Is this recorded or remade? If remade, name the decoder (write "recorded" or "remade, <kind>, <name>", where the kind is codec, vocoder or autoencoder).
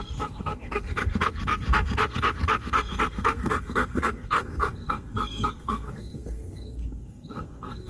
remade, codec, SNAC